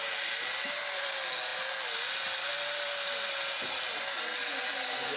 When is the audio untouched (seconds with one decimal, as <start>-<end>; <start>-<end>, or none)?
0.0-5.2